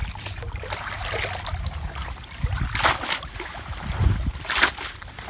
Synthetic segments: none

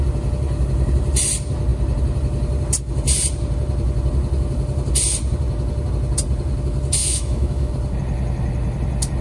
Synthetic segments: 7.0-7.7 (autoencoder, DAC-VAE)

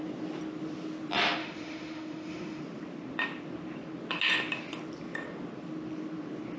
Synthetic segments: 1.4-2.6 (autoencoder, DAC-VAE)

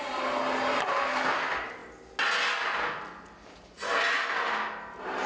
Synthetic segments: none

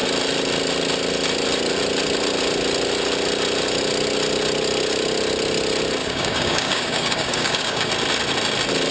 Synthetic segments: 6.0-7.9 (codec, DAC)